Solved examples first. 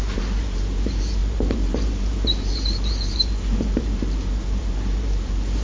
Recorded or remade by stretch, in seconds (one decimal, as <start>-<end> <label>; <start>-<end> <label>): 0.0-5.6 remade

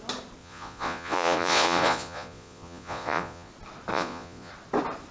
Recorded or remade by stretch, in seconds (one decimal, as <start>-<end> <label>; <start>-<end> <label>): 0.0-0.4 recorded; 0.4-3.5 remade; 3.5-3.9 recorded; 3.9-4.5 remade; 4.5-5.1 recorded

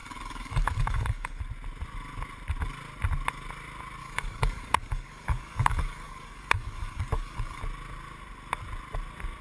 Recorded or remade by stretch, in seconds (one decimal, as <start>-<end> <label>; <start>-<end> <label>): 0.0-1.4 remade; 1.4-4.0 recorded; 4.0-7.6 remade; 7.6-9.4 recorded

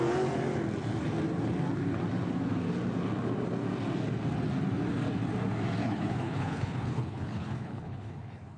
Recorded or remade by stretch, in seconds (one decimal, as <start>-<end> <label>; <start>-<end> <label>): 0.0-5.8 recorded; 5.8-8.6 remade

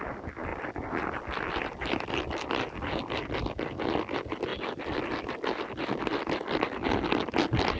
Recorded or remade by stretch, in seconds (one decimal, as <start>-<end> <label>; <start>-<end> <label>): 0.0-4.5 remade; 4.5-5.0 recorded; 5.0-7.8 remade

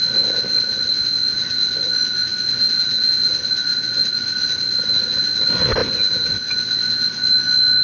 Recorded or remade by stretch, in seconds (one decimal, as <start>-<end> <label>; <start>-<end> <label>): 0.0-7.8 recorded

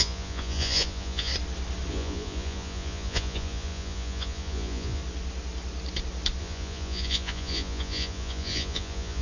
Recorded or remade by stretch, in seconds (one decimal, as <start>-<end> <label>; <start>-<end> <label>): 0.0-1.3 remade; 1.3-1.9 recorded; 1.9-5.0 remade; 5.0-6.4 recorded; 6.4-9.2 remade